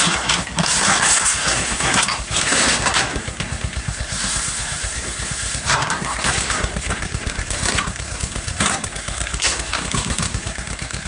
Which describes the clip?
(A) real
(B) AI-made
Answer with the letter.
B